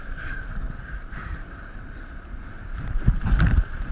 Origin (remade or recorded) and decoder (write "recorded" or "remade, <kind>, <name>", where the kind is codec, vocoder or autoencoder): recorded